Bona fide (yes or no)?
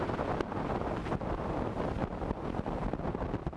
yes